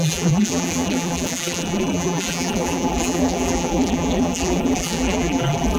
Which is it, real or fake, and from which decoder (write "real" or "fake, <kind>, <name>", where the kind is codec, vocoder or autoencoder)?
fake, vocoder, BigVGAN v2